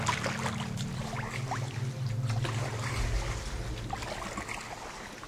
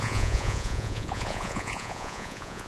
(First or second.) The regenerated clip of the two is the second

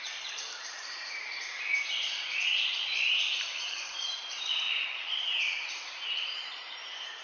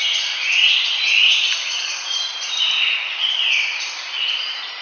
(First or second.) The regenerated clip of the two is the first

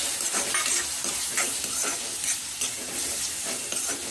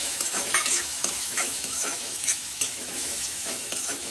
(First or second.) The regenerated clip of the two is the second